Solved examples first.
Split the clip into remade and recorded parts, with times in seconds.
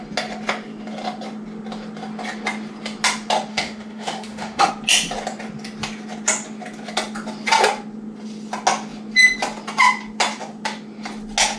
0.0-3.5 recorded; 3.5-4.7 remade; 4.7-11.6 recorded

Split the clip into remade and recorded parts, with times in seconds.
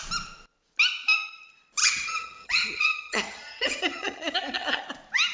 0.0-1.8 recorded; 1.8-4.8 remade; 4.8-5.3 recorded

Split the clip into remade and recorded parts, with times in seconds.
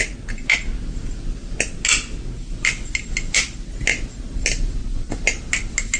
0.0-6.0 recorded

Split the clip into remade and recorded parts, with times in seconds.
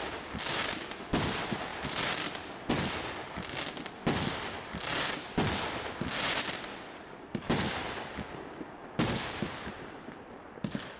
0.0-11.0 recorded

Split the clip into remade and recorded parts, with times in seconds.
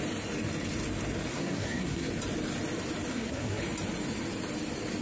0.0-1.3 recorded; 1.3-2.1 remade; 2.1-3.1 recorded; 3.1-3.6 remade; 3.6-5.0 recorded